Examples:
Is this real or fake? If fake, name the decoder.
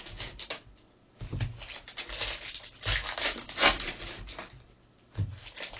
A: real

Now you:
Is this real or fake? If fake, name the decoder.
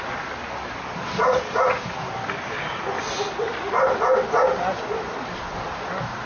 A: real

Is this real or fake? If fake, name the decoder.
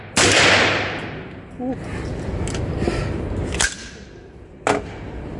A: real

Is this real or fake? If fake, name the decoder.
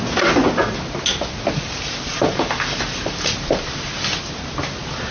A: real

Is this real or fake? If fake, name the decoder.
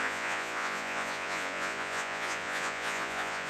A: fake, vocoder, Vocos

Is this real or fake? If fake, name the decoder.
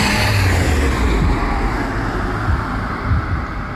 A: real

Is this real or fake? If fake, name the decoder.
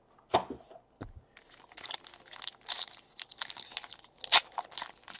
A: real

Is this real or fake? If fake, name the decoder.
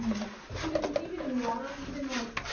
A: real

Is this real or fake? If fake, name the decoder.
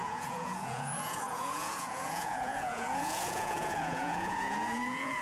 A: fake, vocoder, Vocos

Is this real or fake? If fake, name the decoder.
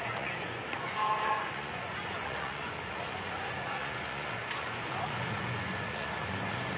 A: fake, vocoder, Vocos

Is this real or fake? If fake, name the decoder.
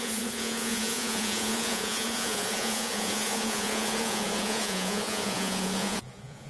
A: fake, vocoder, Vocos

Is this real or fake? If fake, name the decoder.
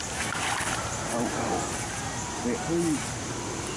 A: real